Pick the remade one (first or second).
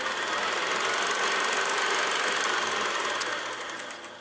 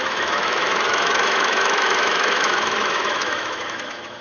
second